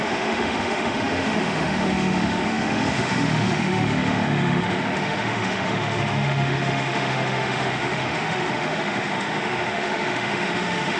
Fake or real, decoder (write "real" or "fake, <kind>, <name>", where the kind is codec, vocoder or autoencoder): fake, autoencoder, DAC-VAE